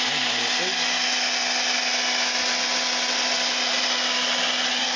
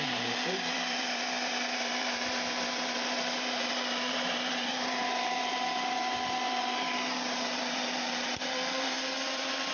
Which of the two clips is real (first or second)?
first